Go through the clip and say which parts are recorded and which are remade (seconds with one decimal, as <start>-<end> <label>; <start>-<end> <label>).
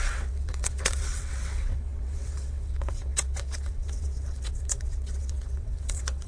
0.0-6.3 remade